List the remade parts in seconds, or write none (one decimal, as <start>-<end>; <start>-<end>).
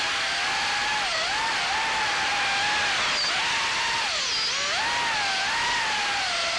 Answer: none